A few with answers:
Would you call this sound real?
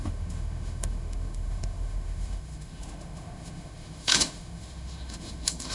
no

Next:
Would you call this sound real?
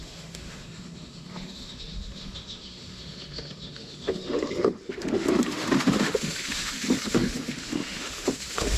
no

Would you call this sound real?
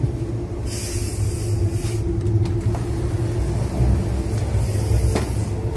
yes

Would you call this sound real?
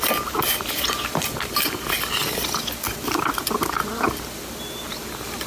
yes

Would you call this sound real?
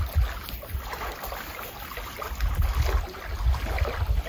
yes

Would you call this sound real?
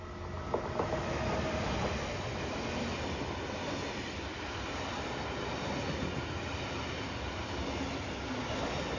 yes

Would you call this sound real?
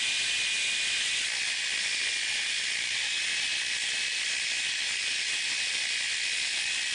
yes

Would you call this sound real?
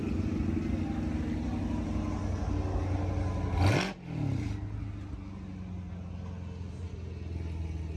yes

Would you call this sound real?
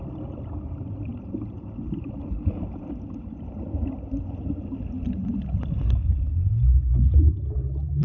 yes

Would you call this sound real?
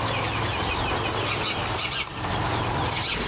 yes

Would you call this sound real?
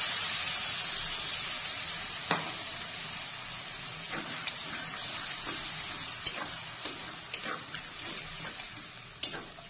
yes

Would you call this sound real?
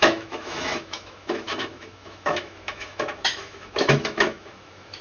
no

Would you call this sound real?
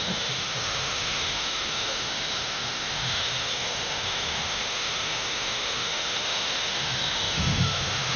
no